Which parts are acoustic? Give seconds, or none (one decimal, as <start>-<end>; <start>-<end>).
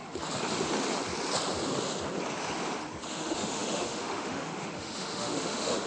0.0-3.1